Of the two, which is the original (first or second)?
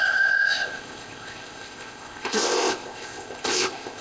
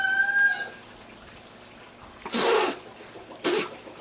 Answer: second